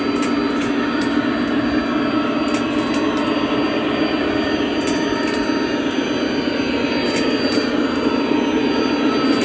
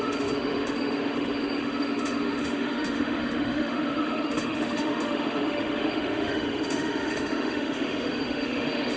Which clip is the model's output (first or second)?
second